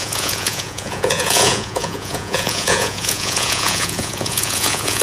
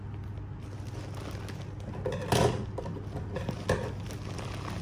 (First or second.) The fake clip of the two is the first